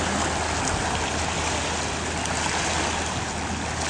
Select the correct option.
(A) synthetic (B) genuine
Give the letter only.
B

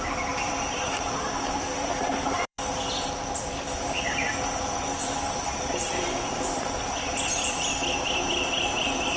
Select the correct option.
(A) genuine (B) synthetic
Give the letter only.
B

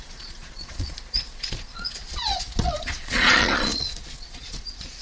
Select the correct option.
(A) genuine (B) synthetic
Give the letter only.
B